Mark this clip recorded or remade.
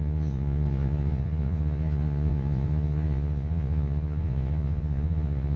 remade